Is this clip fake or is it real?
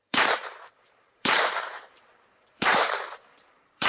fake